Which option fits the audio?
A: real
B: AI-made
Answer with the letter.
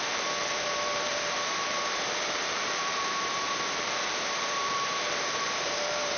B